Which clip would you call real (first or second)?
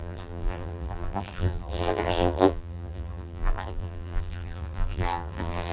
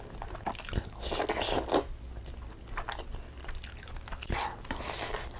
second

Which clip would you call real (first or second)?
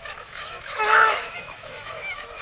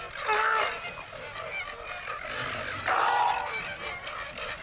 second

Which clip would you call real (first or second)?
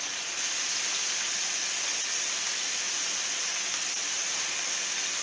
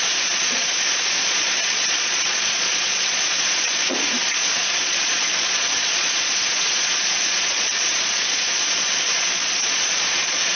first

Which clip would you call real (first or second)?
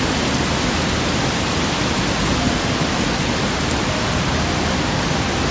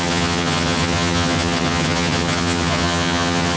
first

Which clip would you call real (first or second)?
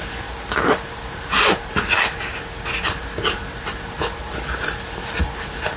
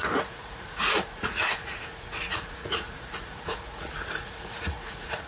first